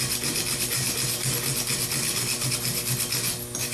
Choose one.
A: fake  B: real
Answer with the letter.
B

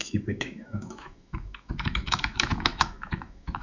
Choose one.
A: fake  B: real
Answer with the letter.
A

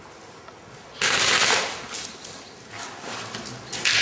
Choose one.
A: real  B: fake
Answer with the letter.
A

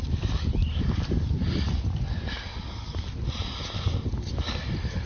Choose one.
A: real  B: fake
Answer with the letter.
A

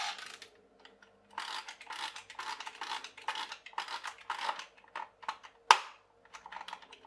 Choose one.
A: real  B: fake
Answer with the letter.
A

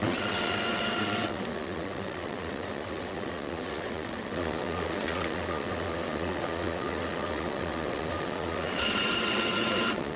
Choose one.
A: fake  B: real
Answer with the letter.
A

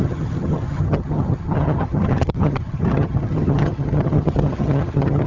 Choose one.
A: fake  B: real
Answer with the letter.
A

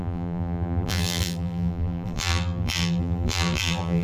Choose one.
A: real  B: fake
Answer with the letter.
B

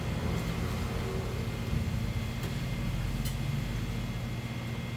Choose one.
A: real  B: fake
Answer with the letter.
A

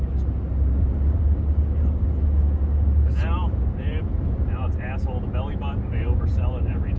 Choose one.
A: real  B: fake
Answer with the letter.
A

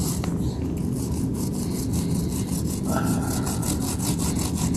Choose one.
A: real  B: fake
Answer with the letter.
A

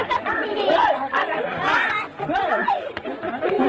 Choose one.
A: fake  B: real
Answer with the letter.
A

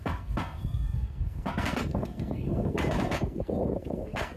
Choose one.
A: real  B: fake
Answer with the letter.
B